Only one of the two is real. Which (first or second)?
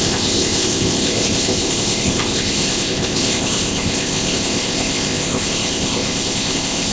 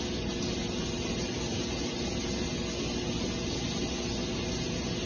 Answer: second